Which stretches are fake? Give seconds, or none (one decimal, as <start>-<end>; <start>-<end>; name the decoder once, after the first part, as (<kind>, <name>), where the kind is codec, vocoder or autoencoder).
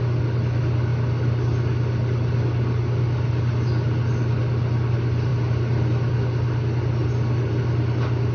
none